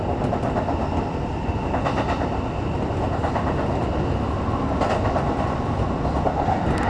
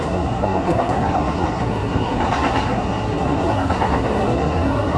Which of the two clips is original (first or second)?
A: first